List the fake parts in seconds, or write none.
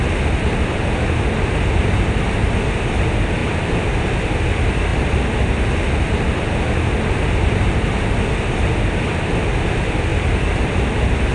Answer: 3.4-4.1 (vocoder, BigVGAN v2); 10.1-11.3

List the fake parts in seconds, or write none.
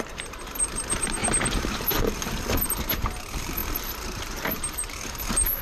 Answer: 0.0-5.6 (vocoder, BigVGAN v2)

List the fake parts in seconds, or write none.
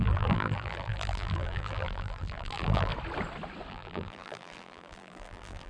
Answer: 0.0-2.9 (vocoder, BigVGAN v2); 3.7-5.7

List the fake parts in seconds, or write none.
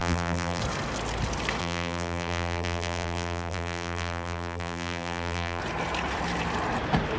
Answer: 0.0-0.6 (vocoder, BigVGAN v2); 1.6-5.6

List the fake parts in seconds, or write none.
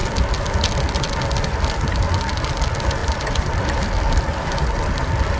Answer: none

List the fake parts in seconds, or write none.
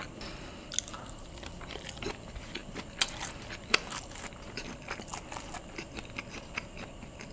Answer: none